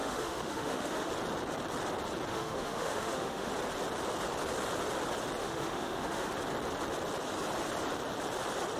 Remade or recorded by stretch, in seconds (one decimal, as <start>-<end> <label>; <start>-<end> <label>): 0.0-1.1 remade; 1.1-2.3 recorded; 2.3-3.5 remade; 3.5-5.4 recorded; 5.4-6.3 remade; 6.3-8.8 recorded